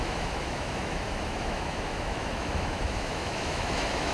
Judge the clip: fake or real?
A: fake